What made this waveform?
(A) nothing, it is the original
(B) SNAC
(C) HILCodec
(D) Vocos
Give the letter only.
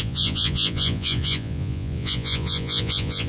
D